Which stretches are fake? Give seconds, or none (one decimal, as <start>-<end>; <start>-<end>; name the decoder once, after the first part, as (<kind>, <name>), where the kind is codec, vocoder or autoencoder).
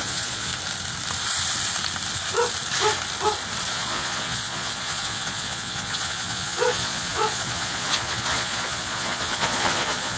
0.0-0.5 (vocoder, Vocos); 3.7-10.2